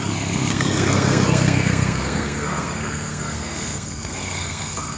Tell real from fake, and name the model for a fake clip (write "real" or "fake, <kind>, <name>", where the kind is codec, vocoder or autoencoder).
fake, codec, SNAC